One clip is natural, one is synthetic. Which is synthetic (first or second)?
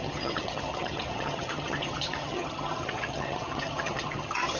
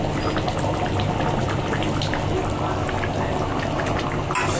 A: first